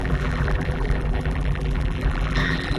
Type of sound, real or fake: fake